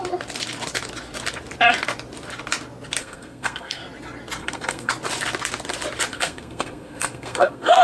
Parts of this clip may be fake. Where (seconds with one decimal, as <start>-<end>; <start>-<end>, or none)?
3.0-3.8; 4.4-4.9; 6.1-7.8